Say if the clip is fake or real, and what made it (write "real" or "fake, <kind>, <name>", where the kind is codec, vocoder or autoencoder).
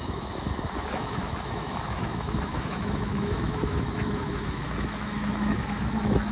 fake, autoencoder, DAC-VAE